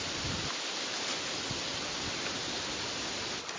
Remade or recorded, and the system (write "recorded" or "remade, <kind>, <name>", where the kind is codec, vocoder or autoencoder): recorded